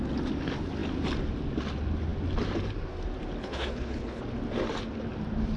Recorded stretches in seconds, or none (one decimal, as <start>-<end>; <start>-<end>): 0.0-3.4; 4.2-5.6